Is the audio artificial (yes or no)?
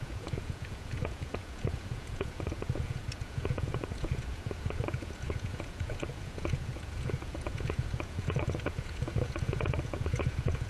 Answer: yes